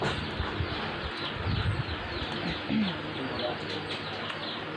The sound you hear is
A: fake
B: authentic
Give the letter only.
B